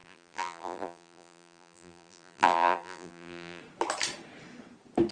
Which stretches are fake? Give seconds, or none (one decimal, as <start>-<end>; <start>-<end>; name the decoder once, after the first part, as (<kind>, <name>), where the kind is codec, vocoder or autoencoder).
0.0-3.6 (vocoder, BigVGAN v2)